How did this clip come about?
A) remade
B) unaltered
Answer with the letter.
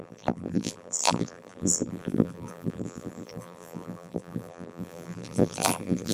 A